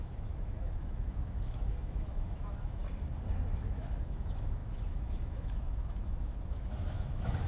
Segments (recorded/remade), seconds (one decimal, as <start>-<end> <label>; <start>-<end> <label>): 0.0-2.8 remade; 2.8-3.6 recorded; 3.6-7.5 remade